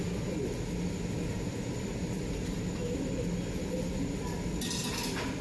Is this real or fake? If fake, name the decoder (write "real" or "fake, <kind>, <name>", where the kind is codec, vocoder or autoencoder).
real